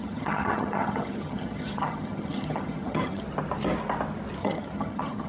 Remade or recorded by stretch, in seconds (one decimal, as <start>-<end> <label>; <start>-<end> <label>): 0.0-3.2 remade; 3.2-4.4 recorded; 4.4-5.3 remade